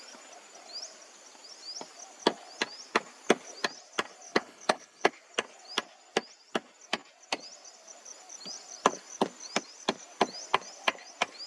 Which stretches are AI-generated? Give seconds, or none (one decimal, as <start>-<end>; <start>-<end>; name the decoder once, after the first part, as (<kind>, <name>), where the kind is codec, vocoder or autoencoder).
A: 4.3-5.1 (codec, HILCodec)